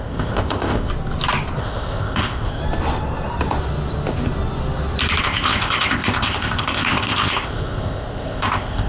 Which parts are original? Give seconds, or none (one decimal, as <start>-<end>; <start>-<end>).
0.9-1.6; 2.6-5.2